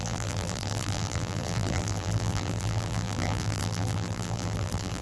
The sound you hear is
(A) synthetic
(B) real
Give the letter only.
A